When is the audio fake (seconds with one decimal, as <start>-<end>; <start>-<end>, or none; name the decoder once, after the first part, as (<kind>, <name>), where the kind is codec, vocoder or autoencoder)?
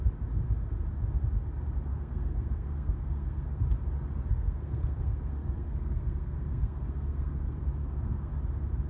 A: 1.9-3.6 (codec, SNAC); 4.3-8.3